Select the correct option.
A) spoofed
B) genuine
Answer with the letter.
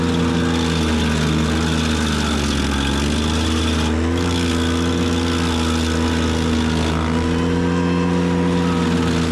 B